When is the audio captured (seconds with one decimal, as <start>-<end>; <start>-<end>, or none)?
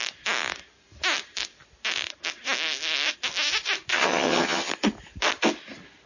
0.0-3.9; 4.7-6.1